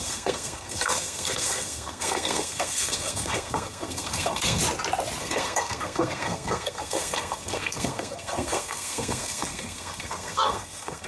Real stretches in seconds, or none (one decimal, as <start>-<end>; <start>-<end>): 4.6-5.2